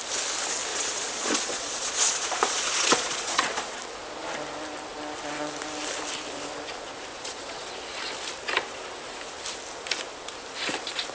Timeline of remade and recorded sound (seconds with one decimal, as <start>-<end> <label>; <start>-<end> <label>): 0.0-0.7 recorded; 0.7-3.8 remade; 3.8-7.1 recorded; 7.1-7.7 remade; 7.7-11.1 recorded